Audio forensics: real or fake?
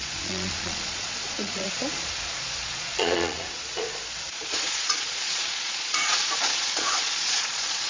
fake